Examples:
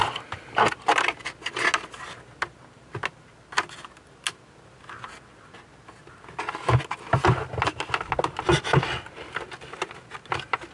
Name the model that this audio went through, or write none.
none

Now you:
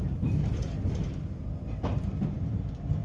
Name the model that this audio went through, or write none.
none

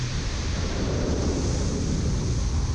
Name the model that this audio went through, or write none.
none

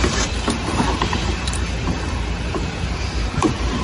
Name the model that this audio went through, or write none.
vocoder, BigVGAN v2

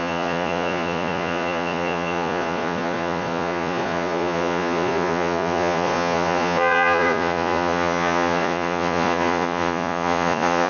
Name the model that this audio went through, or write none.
vocoder, Vocos